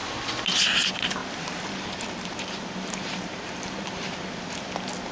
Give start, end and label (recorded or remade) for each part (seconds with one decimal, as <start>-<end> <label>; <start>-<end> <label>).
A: 0.0-1.2 recorded; 1.2-4.3 remade; 4.3-5.1 recorded